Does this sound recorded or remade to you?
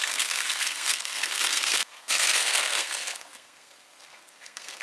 remade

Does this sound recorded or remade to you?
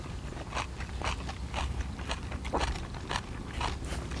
recorded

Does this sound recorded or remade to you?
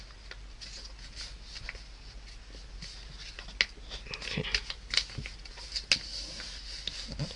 recorded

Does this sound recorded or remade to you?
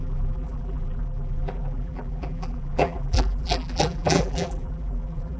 remade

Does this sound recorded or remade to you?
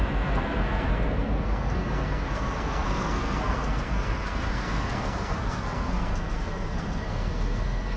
remade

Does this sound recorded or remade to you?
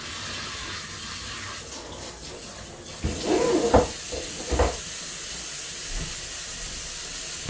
recorded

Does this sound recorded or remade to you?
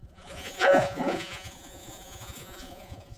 remade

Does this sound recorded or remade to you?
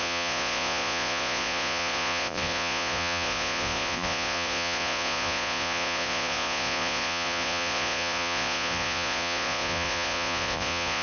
remade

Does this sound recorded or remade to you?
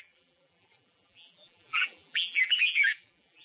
remade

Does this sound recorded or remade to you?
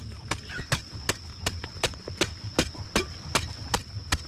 recorded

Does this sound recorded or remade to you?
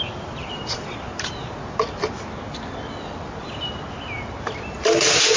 recorded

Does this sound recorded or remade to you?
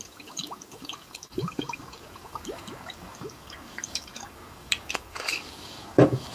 remade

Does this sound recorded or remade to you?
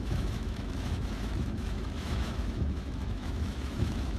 remade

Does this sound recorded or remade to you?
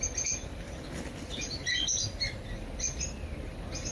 recorded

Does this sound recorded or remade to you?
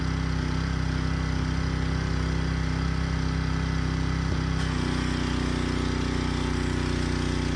recorded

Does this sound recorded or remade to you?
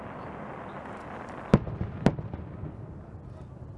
recorded